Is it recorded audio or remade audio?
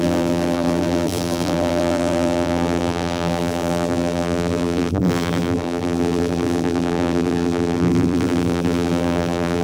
remade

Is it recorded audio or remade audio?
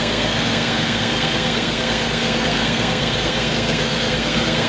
remade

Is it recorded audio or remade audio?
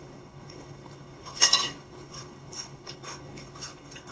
remade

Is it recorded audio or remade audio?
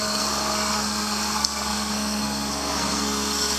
remade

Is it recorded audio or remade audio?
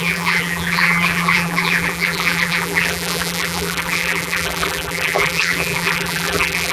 remade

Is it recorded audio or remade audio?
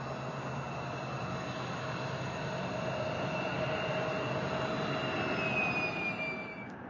remade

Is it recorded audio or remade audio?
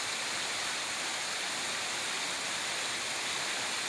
recorded